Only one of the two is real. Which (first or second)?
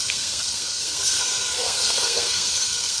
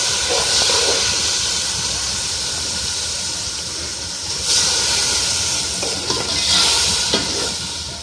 second